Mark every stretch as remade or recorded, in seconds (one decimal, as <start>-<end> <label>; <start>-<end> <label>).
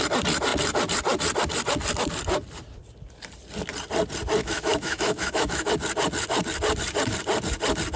0.0-4.4 recorded; 4.4-5.7 remade; 5.7-8.0 recorded